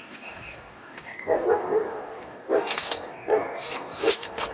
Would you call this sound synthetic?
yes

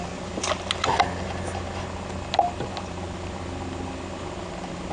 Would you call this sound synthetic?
no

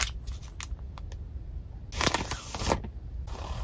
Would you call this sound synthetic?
no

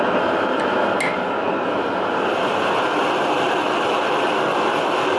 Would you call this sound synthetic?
no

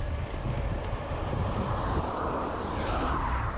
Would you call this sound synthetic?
yes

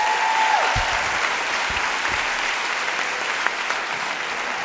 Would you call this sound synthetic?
no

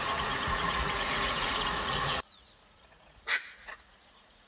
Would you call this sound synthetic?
yes